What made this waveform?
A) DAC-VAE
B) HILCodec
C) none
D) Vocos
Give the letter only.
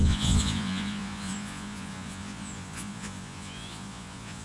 D